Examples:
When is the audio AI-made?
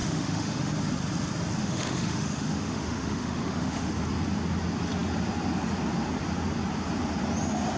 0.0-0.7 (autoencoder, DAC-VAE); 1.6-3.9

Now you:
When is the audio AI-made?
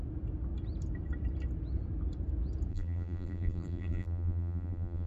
2.7-5.1 (vocoder, BigVGAN v2)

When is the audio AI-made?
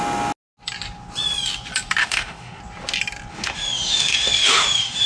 2.0-2.6 (autoencoder, DAC-VAE); 3.3-5.1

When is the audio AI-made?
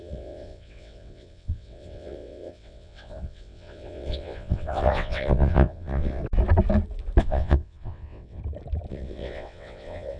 0.0-6.2 (vocoder, WaveNeXt); 7.2-8.4; 8.9-10.2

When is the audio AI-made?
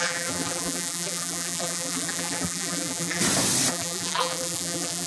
0.0-3.2 (vocoder, BigVGAN v2); 3.7-5.1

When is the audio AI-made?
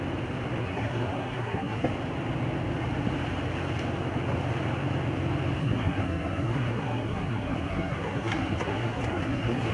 0.6-1.9 (codec, SNAC); 5.6-9.7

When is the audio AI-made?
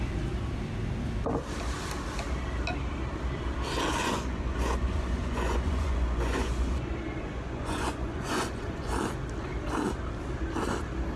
3.9-8.9 (vocoder, Vocos)